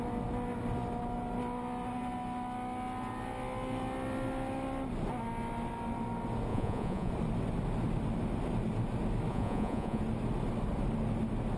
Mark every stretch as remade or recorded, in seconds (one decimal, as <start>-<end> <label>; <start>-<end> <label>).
0.0-6.5 recorded; 6.5-7.1 remade; 7.1-9.3 recorded; 9.3-10.0 remade; 10.0-11.6 recorded

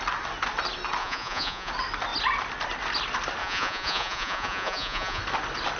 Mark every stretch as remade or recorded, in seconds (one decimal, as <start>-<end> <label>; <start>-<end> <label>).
0.0-1.0 recorded; 1.0-1.7 remade; 1.7-3.4 recorded; 3.4-5.2 remade; 5.2-5.8 recorded

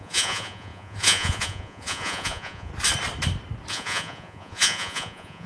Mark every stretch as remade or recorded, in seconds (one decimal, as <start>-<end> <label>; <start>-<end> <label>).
0.0-2.7 remade; 2.7-3.7 recorded; 3.7-5.5 remade

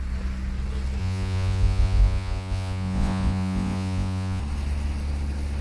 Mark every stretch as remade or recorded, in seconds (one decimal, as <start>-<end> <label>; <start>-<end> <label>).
0.0-1.0 recorded; 1.0-4.4 remade; 4.4-5.6 recorded